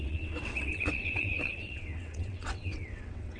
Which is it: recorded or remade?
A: remade